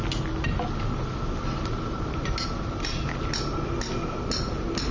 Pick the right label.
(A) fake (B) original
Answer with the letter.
B